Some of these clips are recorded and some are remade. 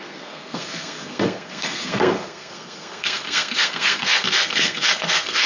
remade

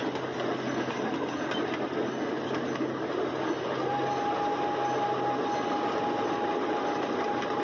recorded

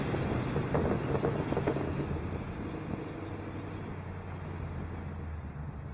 recorded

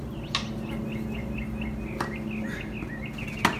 recorded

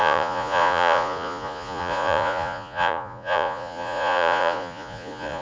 remade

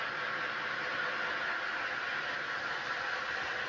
recorded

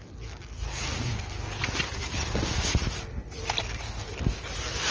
recorded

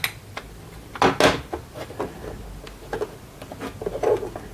recorded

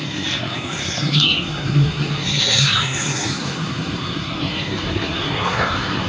remade